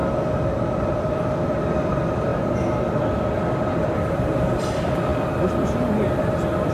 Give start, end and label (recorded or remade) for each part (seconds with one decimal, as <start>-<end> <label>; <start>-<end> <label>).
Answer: 0.0-0.7 recorded; 0.7-2.3 remade; 2.3-3.5 recorded; 3.5-6.7 remade

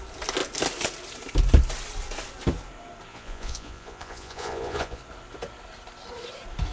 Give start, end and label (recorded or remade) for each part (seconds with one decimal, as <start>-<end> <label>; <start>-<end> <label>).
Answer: 0.0-3.1 recorded; 3.1-5.0 remade; 5.0-6.7 recorded

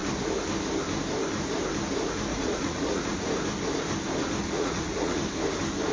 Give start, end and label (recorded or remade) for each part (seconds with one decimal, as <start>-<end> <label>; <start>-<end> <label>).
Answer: 0.0-2.3 recorded; 2.3-3.3 remade; 3.3-4.4 recorded; 4.4-5.2 remade; 5.2-5.9 recorded

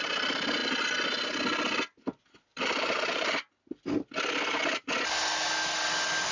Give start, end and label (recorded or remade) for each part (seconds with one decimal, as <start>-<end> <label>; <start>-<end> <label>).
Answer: 0.0-2.5 recorded; 2.5-3.3 remade; 3.3-6.3 recorded

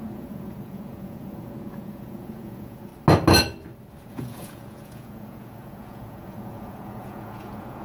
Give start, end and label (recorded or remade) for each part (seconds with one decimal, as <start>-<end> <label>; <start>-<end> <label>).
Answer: 0.0-2.9 remade; 2.9-4.1 recorded; 4.1-7.8 remade

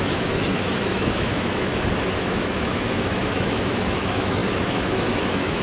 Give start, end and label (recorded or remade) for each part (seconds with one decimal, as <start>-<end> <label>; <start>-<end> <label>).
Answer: 0.0-1.7 remade; 1.7-2.2 recorded; 2.2-5.6 remade